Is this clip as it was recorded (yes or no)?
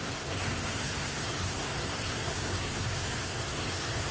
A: no